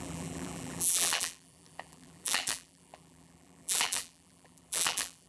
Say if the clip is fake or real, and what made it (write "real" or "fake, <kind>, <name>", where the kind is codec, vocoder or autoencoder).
fake, vocoder, BigVGAN v2